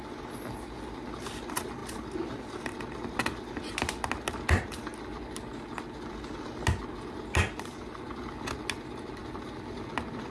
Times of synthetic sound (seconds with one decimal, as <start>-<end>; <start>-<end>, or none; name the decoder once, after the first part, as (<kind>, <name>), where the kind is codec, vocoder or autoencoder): none